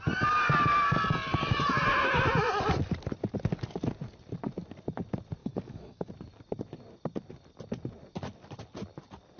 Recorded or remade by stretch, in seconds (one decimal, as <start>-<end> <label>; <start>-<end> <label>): 0.0-5.4 recorded; 5.4-6.1 remade; 6.1-9.4 recorded